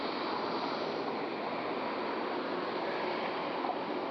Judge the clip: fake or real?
real